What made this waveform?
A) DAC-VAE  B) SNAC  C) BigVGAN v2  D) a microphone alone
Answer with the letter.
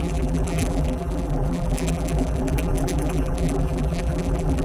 C